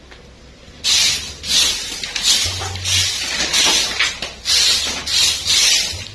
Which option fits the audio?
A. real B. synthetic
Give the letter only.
A